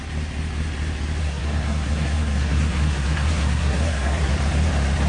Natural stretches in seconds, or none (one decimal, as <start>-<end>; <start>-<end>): 0.0-1.2; 4.3-5.1